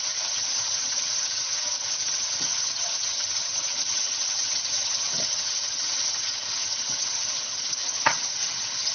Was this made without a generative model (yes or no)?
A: no